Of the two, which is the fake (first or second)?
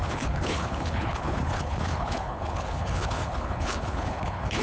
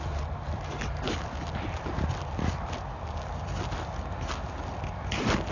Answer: first